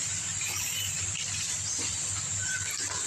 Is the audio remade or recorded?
recorded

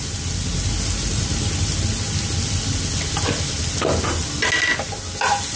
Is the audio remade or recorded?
recorded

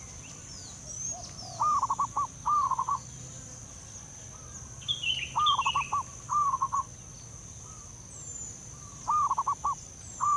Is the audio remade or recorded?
recorded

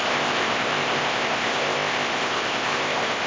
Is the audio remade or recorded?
remade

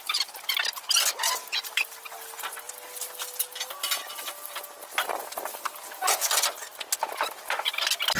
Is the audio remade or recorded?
recorded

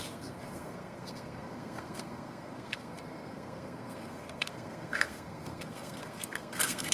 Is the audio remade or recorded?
remade